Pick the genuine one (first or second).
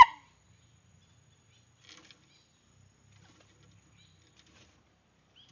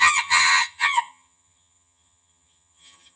first